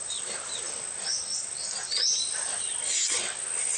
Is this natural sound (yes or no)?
yes